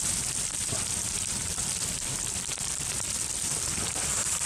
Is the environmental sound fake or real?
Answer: fake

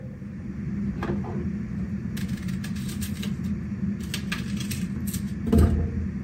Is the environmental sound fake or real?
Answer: real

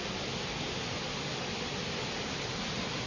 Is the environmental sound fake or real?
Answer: real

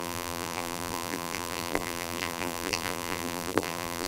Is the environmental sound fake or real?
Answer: fake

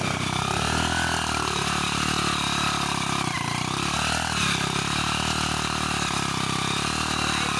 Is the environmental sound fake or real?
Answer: real